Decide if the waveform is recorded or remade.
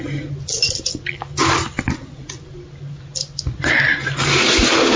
recorded